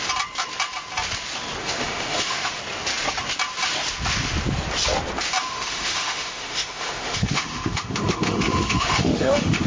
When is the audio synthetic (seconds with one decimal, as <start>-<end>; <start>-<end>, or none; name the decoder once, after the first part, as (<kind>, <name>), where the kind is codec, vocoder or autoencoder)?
1.6-2.6 (autoencoder, DAC-VAE); 5.5-9.7

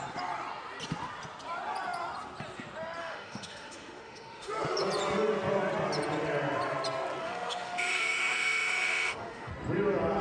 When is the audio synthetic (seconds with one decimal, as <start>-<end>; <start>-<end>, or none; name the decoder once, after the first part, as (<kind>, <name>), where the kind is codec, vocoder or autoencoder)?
3.0-4.5 (autoencoder, DAC-VAE); 7.2-9.5

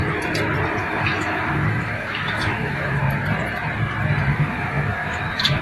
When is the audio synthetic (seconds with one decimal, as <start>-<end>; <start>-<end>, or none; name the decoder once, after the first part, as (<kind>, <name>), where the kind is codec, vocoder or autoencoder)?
0.8-3.0 (autoencoder, DAC-VAE); 4.3-5.6

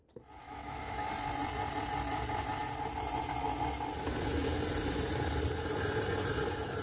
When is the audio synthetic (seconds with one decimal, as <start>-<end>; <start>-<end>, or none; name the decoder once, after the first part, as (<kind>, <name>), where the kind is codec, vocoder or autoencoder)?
0.4-1.1 (autoencoder, DAC-VAE)

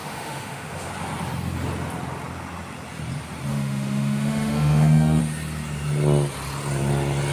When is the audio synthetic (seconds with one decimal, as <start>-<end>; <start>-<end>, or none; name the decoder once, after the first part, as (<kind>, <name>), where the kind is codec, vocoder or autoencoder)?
0.0-0.9 (autoencoder, DAC-VAE); 3.5-5.2

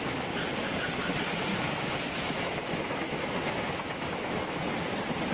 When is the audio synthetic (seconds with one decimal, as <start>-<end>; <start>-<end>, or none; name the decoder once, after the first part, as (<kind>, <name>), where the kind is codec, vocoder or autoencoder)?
1.5-4.7 (autoencoder, DAC-VAE)

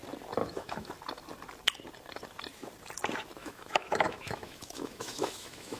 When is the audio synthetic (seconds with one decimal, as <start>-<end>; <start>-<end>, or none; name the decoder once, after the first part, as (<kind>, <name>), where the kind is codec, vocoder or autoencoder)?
0.4-0.9 (autoencoder, DAC-VAE); 3.4-5.8